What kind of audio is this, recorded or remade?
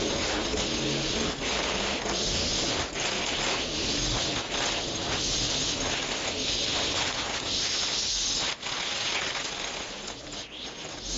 recorded